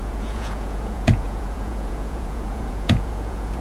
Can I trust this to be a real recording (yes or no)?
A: no